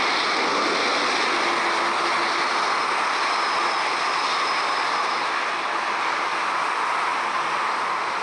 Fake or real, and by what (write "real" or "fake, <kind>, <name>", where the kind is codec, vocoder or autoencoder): real